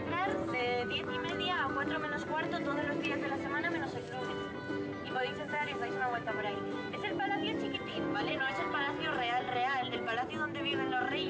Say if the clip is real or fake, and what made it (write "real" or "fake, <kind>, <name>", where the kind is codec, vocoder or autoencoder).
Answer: real